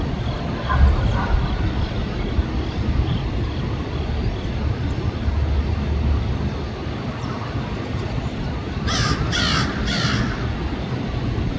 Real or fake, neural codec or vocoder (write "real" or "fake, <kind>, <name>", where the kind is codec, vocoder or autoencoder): real